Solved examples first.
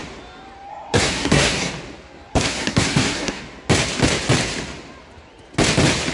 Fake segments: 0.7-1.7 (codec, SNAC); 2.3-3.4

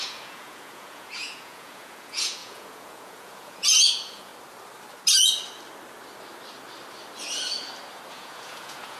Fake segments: 0.0-4.3 (vocoder, Vocos); 8.1-9.0

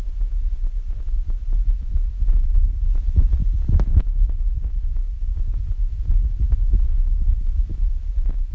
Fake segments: none